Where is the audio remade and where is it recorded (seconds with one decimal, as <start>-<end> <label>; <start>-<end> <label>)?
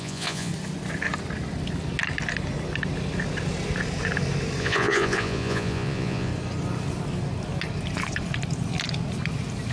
0.0-0.5 remade; 0.5-4.6 recorded; 4.6-6.3 remade; 6.3-9.7 recorded